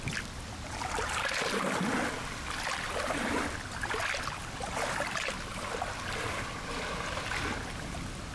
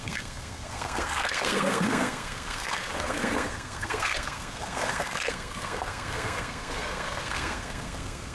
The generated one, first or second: second